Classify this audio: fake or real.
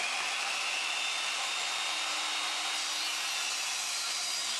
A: real